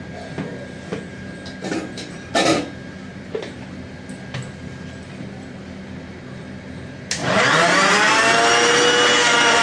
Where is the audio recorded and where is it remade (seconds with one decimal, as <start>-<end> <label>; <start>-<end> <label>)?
0.0-0.9 recorded; 0.9-2.3 remade; 2.3-3.1 recorded; 3.1-3.7 remade; 3.7-7.2 recorded; 7.2-8.1 remade; 8.1-9.6 recorded